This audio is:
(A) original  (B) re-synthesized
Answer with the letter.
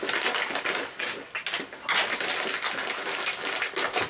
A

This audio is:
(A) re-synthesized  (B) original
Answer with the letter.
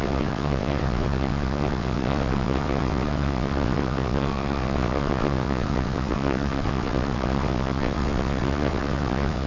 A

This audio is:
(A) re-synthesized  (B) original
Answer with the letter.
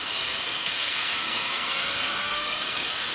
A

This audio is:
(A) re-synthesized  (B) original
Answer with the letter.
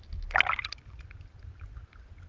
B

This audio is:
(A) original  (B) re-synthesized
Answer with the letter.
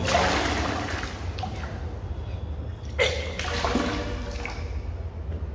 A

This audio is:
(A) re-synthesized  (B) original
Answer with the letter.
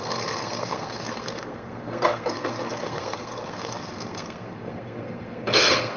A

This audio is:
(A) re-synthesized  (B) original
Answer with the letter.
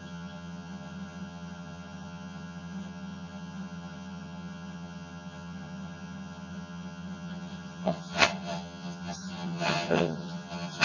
A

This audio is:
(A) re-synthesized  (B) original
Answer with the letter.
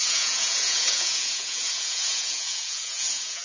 A